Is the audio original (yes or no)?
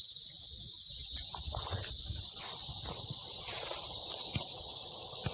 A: yes